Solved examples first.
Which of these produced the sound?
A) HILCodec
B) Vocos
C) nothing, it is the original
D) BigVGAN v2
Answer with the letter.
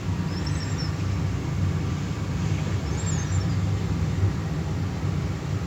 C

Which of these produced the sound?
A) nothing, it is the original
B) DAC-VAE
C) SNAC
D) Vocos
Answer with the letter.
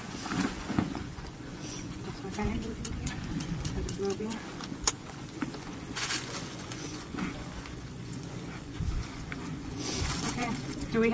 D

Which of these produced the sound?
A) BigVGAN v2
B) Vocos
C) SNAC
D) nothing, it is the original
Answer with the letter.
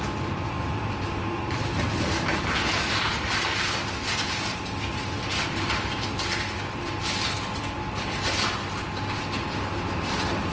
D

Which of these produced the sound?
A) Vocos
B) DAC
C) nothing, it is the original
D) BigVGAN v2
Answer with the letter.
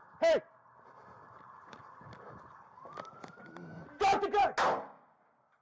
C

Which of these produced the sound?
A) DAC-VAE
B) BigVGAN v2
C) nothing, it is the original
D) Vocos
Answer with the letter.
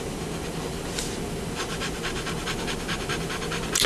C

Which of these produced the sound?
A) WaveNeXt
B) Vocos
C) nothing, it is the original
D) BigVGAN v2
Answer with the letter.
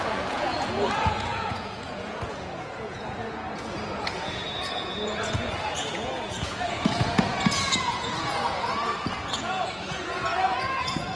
B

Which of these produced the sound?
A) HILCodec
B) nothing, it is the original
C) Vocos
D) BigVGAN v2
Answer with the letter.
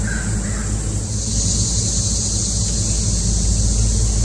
B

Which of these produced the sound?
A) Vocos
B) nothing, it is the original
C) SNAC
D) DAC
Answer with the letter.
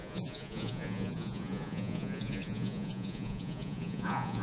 A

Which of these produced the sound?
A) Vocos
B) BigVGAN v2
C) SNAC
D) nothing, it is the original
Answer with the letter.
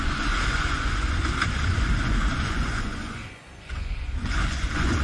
A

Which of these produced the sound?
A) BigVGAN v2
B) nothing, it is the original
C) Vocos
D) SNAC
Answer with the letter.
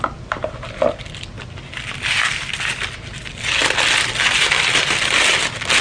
B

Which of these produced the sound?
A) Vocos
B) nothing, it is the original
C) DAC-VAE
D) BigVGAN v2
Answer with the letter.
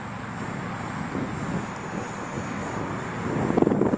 B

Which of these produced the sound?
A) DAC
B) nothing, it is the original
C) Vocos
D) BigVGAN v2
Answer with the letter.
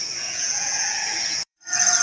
C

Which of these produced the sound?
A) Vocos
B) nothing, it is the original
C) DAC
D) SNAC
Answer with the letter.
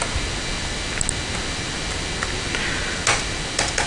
B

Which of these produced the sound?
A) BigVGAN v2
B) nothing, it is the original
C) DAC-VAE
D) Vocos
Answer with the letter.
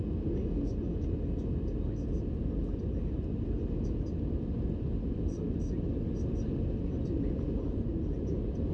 B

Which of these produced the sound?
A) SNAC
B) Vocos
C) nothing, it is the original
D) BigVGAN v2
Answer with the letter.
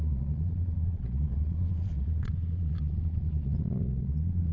B